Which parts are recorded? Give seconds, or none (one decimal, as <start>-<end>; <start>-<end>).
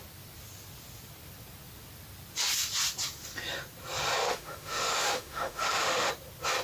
0.0-4.2; 6.1-6.6